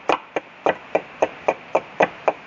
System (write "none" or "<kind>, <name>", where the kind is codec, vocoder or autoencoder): none